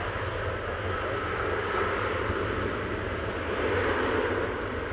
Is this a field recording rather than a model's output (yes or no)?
yes